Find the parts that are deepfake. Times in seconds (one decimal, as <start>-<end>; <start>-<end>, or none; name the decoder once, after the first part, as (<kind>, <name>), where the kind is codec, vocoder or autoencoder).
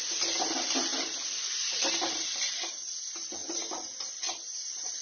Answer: none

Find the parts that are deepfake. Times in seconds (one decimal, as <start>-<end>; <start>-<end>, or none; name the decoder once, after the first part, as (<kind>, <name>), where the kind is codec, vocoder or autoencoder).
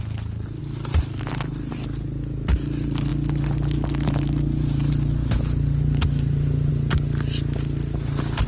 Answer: 3.1-6.7 (vocoder, BigVGAN v2)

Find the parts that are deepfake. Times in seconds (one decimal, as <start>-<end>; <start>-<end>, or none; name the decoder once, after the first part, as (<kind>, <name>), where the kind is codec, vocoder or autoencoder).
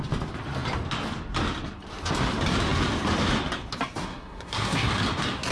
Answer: 4.0-4.9 (codec, SNAC)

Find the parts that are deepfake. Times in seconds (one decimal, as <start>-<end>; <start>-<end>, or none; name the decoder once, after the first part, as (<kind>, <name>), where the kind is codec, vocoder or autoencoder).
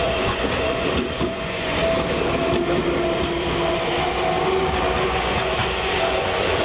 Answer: 0.0-1.8 (vocoder, Vocos); 5.0-6.6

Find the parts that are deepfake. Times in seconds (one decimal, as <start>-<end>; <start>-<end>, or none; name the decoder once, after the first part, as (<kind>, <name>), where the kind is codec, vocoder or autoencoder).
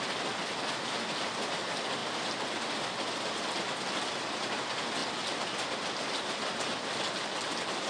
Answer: none